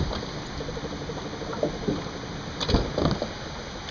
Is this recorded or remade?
recorded